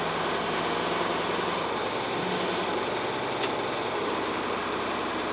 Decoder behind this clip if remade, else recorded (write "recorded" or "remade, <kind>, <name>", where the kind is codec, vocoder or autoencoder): recorded